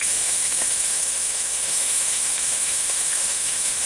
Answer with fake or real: fake